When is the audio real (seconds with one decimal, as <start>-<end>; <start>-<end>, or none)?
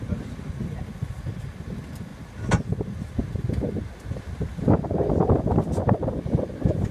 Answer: 0.0-6.9